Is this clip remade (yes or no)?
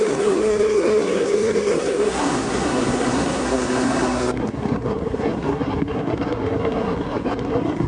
yes